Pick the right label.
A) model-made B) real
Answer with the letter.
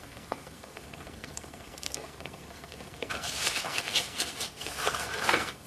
A